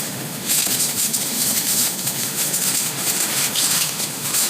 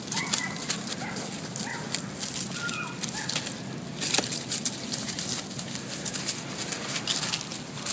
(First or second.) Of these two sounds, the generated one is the first